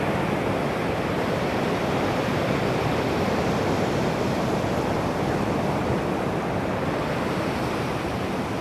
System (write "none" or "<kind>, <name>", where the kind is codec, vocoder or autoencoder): none